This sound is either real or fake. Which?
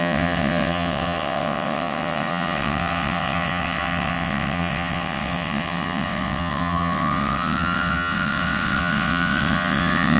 fake